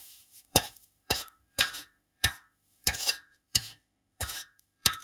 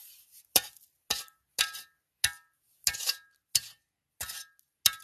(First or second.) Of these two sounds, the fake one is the first